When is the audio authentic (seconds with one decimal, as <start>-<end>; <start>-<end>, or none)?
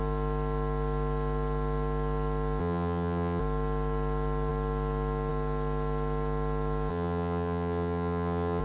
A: 0.0-2.6; 3.4-6.9